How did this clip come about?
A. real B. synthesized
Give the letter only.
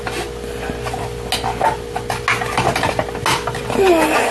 A